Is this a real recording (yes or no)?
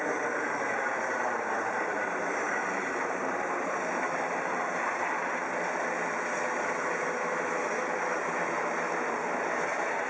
no